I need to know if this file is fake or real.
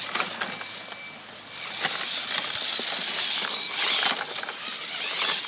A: real